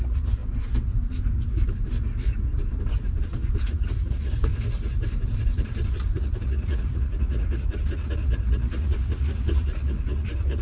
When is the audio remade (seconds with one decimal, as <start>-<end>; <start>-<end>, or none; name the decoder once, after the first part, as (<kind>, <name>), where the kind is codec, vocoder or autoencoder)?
0.0-0.4 (vocoder, Vocos); 3.6-4.5; 5.9-10.6